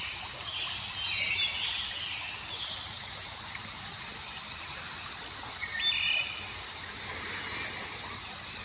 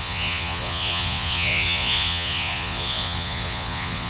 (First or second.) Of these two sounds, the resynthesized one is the second